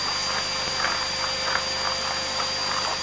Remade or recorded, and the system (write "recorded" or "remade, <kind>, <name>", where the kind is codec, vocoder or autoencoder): recorded